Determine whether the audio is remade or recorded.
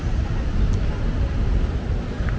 recorded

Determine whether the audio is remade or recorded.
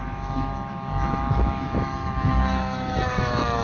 remade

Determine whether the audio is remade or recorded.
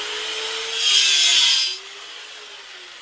recorded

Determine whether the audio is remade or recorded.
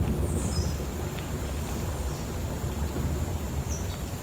remade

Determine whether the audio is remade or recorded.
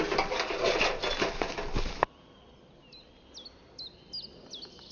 recorded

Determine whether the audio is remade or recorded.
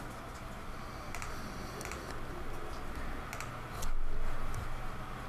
recorded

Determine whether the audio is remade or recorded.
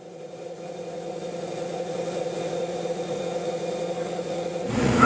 remade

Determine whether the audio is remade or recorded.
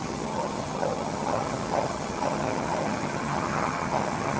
remade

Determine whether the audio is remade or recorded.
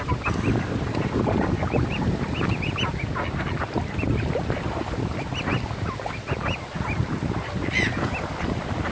recorded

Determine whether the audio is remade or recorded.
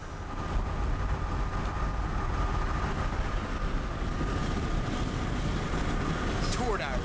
recorded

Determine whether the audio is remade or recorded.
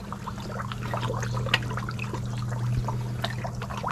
recorded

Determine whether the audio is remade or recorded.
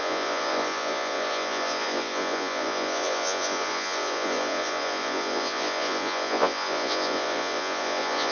remade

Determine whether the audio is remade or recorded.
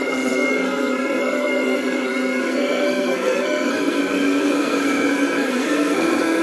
remade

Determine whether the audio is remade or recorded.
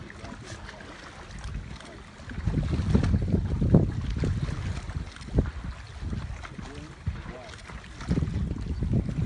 recorded